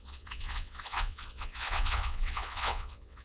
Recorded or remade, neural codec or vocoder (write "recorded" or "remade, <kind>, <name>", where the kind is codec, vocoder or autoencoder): remade, vocoder, WaveNeXt